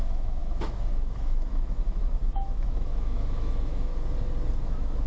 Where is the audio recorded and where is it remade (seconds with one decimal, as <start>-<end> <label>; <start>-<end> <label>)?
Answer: 0.0-3.9 remade; 3.9-4.6 recorded; 4.6-5.1 remade